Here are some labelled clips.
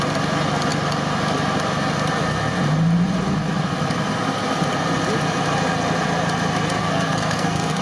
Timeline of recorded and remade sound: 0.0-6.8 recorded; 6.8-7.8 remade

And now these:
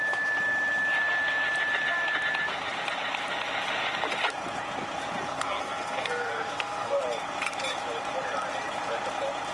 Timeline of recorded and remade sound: 0.0-5.3 recorded; 5.3-7.0 remade; 7.0-9.5 recorded

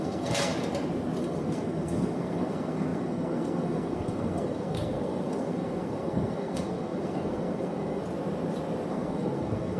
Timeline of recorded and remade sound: 0.0-0.5 remade; 0.5-1.2 recorded; 1.2-8.0 remade; 8.0-8.9 recorded; 8.9-9.8 remade

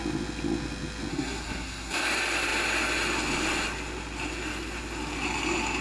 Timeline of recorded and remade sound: 0.0-1.1 recorded; 1.1-2.0 remade; 2.0-5.8 recorded